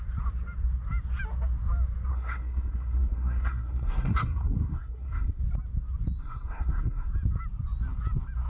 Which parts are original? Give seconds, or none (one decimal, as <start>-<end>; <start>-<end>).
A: 0.0-2.1; 5.4-6.2; 7.1-8.5